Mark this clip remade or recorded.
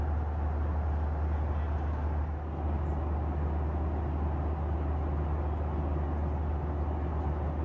recorded